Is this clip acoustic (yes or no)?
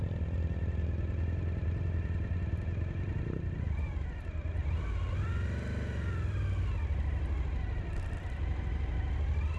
yes